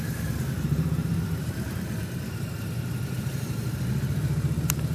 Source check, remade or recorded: recorded